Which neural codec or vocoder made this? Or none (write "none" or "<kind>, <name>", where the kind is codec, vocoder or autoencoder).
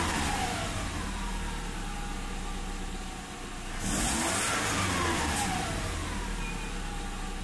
none